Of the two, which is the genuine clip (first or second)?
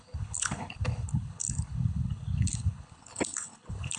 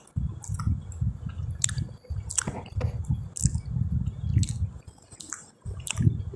second